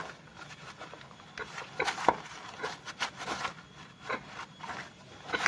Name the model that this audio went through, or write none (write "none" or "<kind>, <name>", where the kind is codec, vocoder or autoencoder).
none